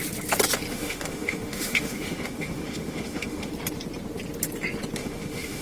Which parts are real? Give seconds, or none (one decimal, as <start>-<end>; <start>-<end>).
0.0-0.7; 3.5-5.0